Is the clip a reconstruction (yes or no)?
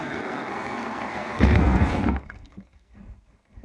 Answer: yes